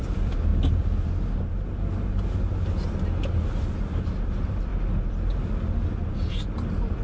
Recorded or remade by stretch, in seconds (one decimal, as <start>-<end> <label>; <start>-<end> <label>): 0.0-0.5 remade; 0.5-3.5 recorded; 3.5-4.7 remade; 4.7-6.3 recorded; 6.3-7.0 remade